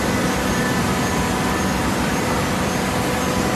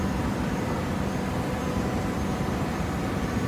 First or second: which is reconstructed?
second